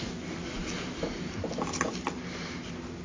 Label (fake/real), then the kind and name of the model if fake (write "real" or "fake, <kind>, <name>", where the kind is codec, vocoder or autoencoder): real